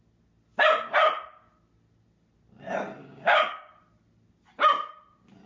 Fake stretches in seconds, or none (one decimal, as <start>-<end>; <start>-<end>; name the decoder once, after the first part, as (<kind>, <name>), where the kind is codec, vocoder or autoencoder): 3.0-3.7 (codec, DAC)